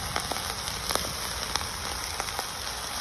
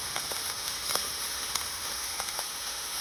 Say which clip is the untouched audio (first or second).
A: first